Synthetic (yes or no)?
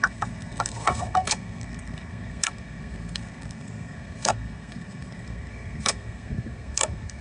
yes